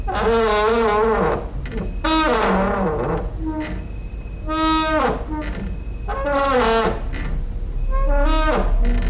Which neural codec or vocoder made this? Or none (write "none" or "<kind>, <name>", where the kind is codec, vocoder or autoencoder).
none